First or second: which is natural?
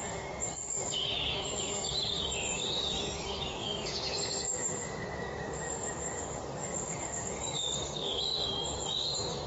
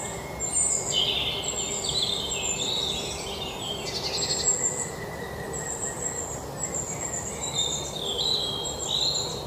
second